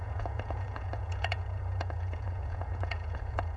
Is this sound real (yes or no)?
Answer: no